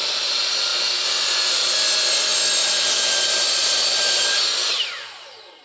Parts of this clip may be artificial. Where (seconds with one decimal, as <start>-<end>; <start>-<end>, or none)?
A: 2.6-4.5